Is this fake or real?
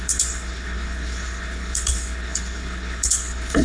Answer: fake